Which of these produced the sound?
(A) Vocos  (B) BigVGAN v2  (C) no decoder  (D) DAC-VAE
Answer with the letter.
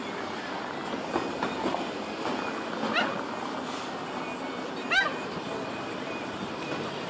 C